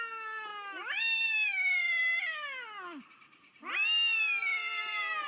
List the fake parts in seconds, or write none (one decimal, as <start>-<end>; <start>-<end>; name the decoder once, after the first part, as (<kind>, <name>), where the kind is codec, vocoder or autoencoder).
none